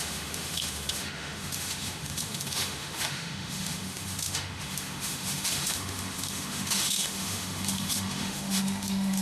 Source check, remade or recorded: remade